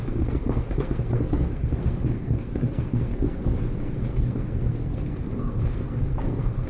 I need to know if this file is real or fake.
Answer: fake